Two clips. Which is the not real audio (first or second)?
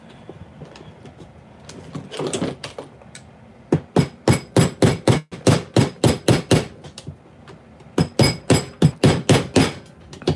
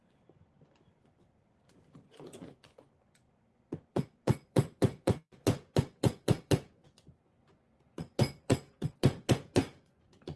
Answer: second